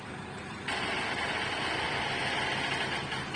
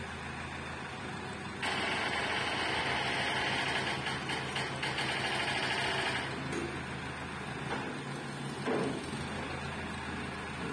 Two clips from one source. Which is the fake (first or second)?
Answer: first